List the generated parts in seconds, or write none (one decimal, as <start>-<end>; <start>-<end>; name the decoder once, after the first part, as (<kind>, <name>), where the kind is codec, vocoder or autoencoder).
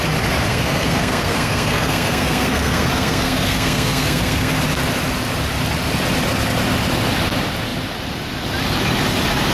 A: 0.5-4.5 (codec, SNAC)